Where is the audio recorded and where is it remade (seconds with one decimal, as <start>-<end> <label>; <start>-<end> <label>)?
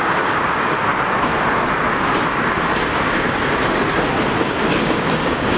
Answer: 0.0-0.9 remade; 0.9-4.3 recorded; 4.3-5.6 remade